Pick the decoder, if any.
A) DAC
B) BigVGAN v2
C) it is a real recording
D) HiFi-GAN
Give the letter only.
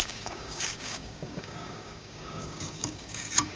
A